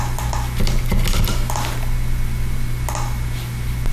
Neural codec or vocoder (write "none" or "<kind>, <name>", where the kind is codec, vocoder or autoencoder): none